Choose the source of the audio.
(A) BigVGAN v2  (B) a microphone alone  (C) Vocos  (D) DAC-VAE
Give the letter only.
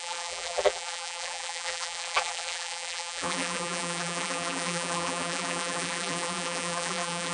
A